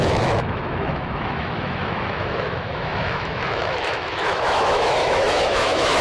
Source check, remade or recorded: remade